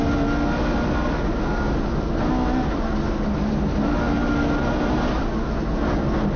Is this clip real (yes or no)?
yes